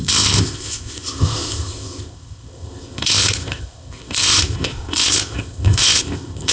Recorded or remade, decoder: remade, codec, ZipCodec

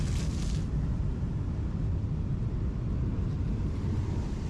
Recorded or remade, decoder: recorded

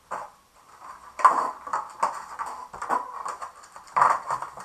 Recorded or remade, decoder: recorded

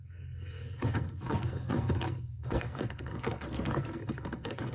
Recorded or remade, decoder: remade, codec, SNAC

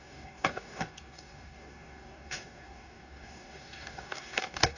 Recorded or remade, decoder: remade, codec, DAC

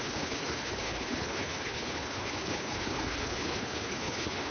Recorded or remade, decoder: remade, codec, HILCodec